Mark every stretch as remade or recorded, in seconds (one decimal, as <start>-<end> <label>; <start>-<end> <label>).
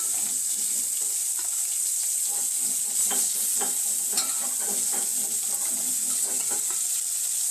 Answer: 0.0-7.5 recorded